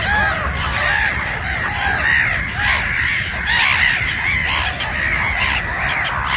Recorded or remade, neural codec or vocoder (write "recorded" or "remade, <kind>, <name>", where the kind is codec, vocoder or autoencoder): recorded